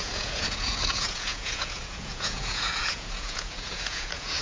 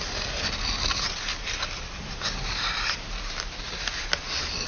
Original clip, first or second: second